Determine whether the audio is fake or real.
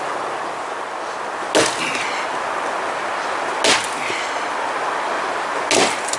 real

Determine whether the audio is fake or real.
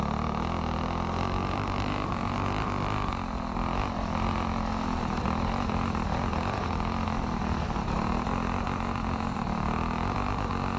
real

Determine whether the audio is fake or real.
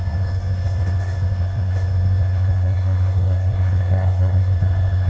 fake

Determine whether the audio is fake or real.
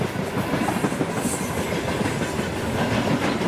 real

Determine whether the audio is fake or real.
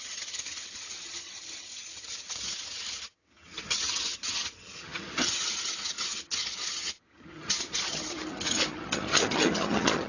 fake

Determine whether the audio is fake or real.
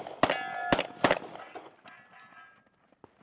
real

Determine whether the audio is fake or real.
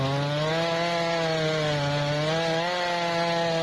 real